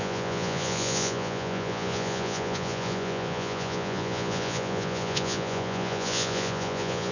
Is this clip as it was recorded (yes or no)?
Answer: no